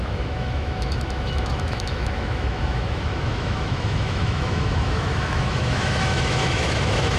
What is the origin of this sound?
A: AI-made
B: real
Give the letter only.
A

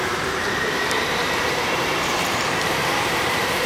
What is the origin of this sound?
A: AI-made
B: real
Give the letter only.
A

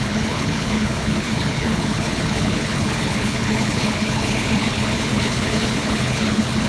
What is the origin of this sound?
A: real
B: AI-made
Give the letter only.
B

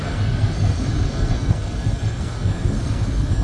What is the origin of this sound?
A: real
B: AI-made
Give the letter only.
B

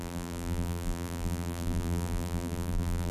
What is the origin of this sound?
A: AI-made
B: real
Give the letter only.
A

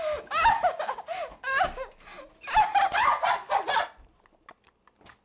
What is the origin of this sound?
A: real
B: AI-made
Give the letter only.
A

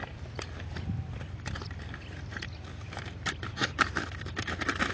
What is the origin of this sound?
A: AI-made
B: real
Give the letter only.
A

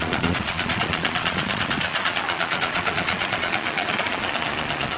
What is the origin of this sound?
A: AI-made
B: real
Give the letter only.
A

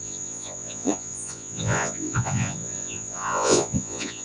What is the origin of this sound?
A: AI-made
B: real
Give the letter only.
A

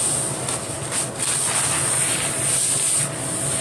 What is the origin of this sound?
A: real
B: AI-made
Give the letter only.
A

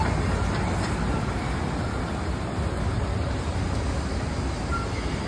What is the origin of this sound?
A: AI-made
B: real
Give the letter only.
B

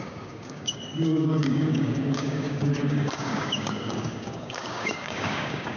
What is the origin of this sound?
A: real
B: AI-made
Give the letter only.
B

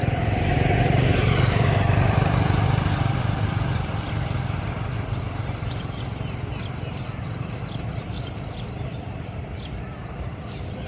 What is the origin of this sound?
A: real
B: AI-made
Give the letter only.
B